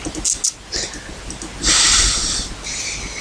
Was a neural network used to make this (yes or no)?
no